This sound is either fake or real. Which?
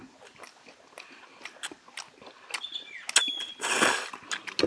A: real